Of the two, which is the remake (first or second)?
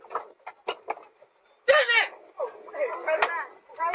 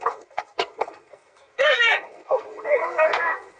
second